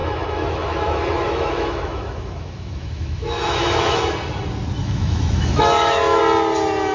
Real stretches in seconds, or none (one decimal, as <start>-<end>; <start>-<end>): 4.0-4.8; 6.2-6.9